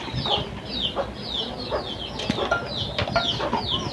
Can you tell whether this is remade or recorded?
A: recorded